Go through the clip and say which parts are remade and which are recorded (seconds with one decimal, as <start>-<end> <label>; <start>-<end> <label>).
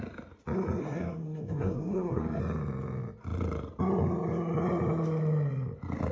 0.0-0.8 recorded; 0.8-2.4 remade; 2.4-6.1 recorded